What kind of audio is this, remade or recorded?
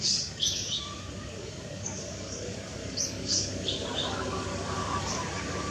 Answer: remade